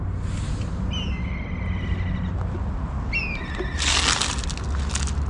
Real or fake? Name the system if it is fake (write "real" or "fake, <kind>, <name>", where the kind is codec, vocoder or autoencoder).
real